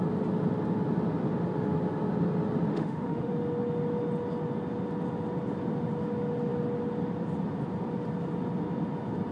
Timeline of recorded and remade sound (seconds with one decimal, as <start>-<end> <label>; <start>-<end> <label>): 0.0-2.7 recorded; 2.7-3.3 remade; 3.3-9.3 recorded